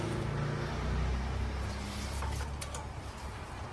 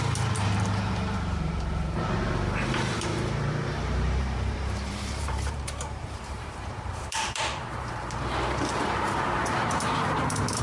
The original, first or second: first